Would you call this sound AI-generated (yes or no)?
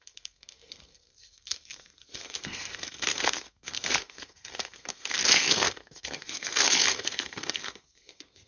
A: yes